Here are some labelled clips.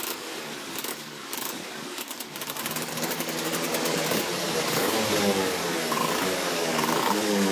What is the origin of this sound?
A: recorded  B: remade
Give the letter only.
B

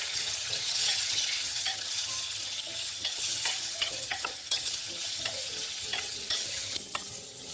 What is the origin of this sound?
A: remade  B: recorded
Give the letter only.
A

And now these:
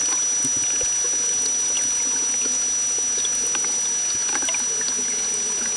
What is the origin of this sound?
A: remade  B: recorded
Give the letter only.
B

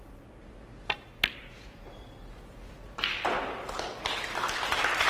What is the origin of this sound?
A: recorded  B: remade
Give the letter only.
A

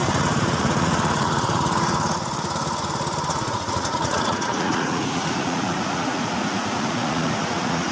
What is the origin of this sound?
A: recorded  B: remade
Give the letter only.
B